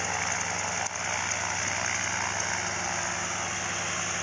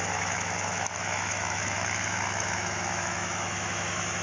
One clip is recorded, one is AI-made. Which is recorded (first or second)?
first